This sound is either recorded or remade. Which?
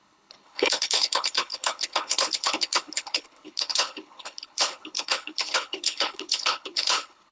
remade